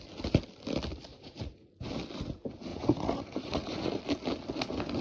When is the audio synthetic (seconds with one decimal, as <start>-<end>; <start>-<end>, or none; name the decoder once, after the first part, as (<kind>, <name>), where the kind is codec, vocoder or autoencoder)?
1.1-1.7 (vocoder, Vocos); 2.7-4.0